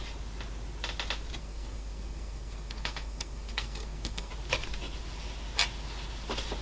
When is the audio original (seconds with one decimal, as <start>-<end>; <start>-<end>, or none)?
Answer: 0.0-1.4; 4.3-6.6